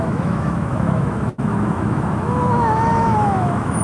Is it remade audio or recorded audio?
remade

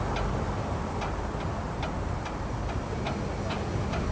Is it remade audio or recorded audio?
recorded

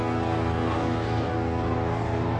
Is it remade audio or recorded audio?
remade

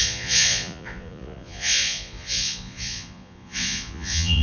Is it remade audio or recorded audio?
remade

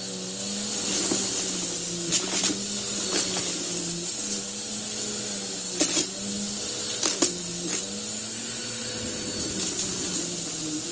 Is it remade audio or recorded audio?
recorded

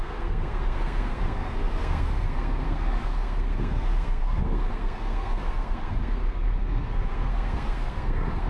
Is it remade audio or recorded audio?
remade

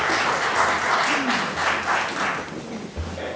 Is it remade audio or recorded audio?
recorded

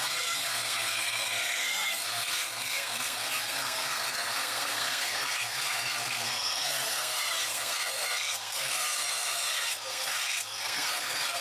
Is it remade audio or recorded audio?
remade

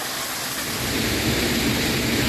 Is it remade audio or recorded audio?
recorded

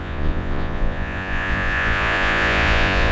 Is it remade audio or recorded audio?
remade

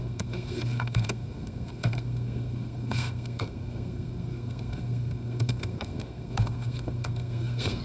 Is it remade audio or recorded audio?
remade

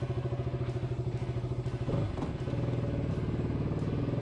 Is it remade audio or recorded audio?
recorded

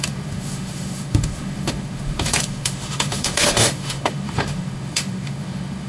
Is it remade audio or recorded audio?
remade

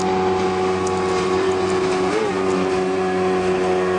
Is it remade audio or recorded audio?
recorded